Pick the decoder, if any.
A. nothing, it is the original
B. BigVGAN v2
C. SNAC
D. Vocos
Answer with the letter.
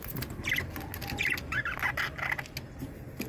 A